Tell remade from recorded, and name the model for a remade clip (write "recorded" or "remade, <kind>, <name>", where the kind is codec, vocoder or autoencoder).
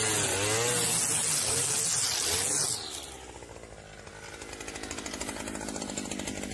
recorded